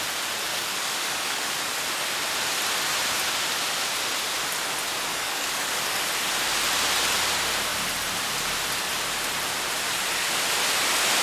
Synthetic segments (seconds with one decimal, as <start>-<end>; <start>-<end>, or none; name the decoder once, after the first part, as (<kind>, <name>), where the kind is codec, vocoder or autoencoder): 0.5-1.8 (codec, DAC); 5.1-6.1